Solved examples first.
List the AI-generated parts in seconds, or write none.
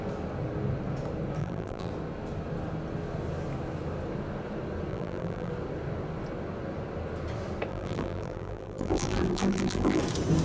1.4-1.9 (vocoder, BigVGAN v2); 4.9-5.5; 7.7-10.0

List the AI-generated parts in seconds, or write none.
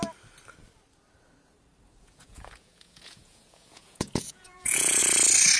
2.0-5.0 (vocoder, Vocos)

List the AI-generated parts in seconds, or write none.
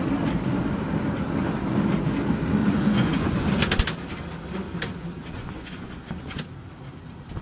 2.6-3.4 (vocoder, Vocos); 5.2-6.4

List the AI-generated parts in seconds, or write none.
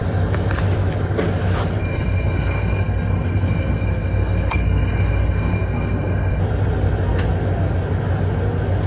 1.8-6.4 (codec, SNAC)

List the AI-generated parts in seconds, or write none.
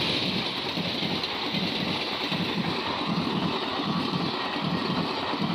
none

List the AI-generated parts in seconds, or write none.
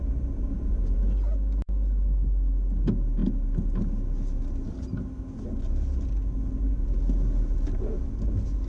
none